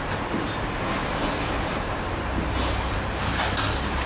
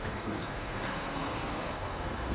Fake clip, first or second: second